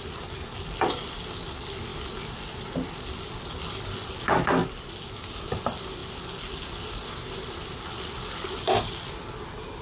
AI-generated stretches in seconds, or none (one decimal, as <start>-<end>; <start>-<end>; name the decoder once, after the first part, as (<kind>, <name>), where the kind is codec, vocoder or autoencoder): none